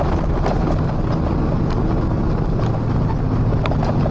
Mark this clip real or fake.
real